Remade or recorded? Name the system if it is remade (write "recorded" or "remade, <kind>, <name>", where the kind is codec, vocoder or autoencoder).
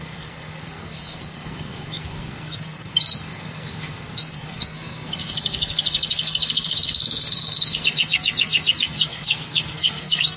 remade, codec, SNAC